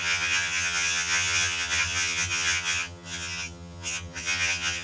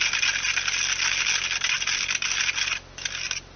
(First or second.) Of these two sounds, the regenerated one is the first